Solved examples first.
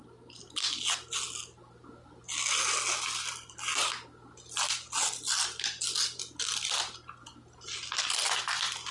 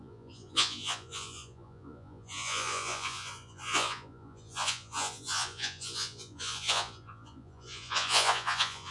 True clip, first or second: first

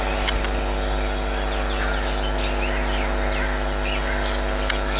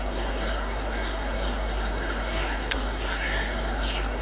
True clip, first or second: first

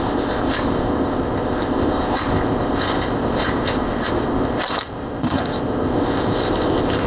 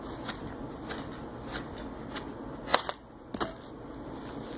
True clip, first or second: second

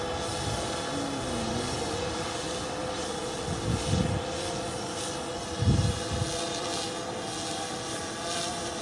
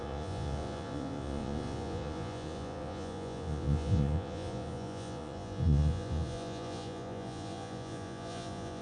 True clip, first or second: first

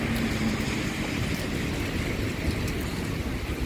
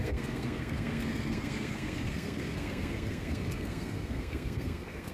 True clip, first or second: first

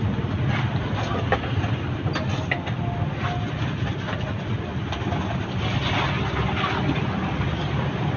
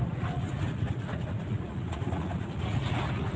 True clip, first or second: first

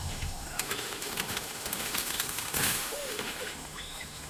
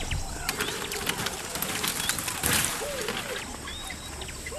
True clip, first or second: second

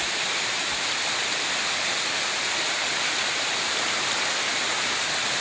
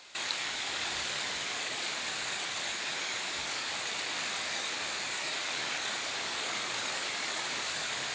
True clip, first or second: first